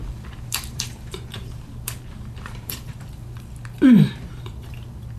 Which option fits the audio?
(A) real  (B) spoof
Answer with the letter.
B